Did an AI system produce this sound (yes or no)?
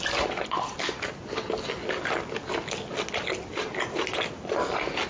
no